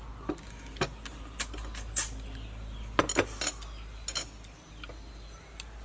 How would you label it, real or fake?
real